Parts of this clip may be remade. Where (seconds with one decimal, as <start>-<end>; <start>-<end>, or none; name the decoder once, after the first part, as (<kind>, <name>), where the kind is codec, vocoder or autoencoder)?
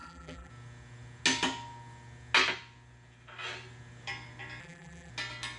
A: 0.0-0.5 (vocoder, BigVGAN v2); 4.6-5.1